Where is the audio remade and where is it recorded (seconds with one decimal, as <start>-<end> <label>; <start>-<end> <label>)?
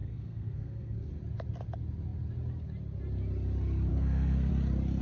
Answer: 0.0-1.1 remade; 1.1-3.9 recorded; 3.9-4.5 remade; 4.5-5.0 recorded